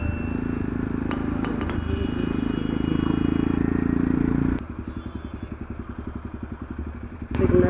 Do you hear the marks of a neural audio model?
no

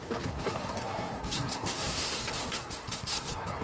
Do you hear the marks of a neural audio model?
yes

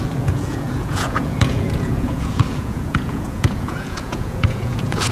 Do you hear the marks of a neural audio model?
yes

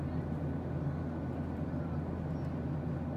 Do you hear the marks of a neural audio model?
no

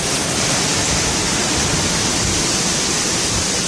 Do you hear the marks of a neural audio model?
yes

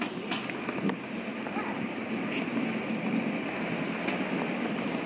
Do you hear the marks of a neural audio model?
no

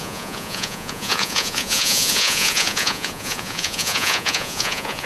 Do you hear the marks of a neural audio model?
yes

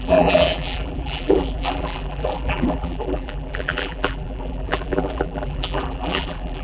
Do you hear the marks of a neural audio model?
yes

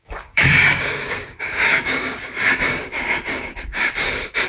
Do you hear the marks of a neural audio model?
yes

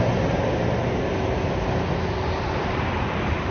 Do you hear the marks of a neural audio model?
yes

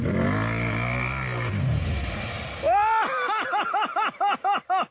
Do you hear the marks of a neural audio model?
no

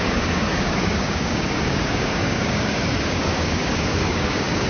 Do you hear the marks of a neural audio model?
yes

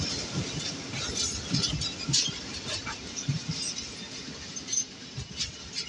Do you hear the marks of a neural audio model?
no